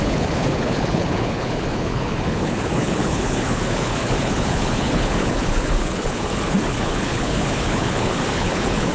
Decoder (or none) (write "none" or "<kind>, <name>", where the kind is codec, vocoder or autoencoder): codec, HILCodec